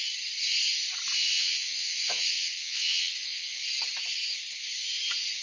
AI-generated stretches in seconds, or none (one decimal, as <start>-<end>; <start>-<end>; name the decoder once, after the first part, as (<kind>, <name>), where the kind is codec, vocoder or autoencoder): 1.1-3.6 (vocoder, WaveNeXt)